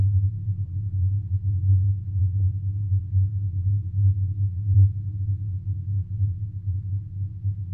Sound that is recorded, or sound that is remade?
remade